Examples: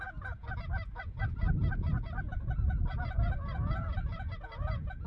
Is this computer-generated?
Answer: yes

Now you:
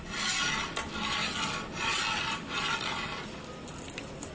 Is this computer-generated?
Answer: no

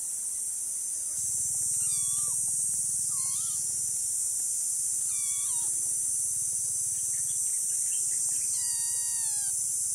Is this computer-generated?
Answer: no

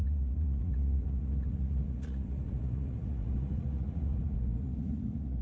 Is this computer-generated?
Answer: yes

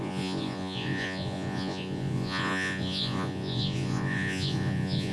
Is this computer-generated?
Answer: yes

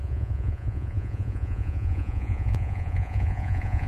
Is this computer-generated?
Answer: yes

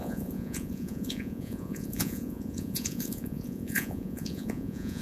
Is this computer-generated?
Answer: yes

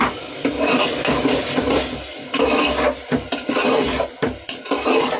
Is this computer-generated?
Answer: no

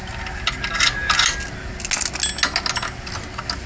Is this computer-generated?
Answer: no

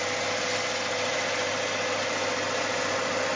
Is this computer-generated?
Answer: no